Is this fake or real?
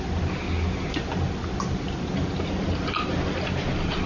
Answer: real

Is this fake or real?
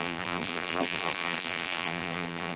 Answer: fake